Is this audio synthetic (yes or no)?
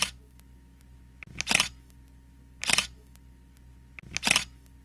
no